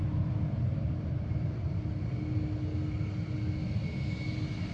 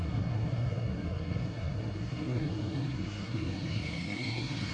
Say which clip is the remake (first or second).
second